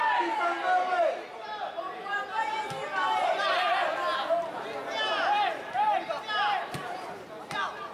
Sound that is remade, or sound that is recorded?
recorded